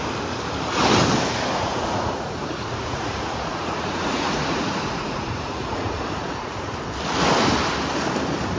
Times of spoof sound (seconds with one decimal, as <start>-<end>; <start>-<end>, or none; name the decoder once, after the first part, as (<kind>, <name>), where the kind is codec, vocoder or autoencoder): 1.5-6.7 (vocoder, Vocos)